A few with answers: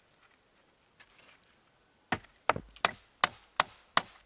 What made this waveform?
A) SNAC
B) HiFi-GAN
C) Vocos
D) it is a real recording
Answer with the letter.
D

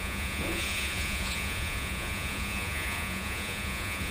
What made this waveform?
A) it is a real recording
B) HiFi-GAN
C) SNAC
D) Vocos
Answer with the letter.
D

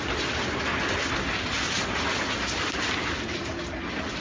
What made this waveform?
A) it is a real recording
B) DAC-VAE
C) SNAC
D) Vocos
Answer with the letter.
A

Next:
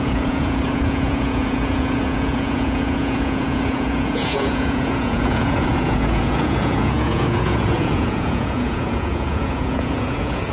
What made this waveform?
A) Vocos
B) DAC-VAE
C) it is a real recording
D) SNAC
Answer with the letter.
A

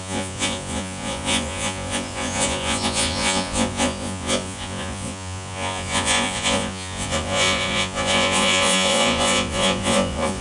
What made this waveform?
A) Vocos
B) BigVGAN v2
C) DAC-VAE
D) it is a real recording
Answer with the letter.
A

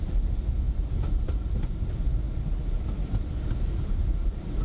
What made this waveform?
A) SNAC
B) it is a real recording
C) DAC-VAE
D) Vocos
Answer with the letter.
B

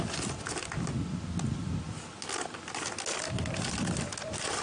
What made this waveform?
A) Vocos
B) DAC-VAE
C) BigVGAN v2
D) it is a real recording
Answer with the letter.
D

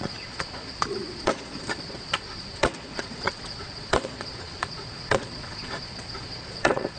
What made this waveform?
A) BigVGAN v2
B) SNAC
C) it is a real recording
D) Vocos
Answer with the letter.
D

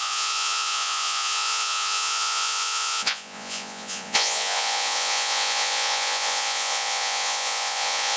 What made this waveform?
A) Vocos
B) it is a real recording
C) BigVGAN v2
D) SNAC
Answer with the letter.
A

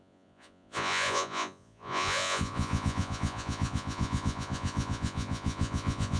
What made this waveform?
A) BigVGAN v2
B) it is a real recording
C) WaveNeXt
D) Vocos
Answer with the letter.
D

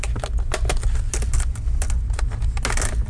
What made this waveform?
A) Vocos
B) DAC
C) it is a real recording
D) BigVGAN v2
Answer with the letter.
C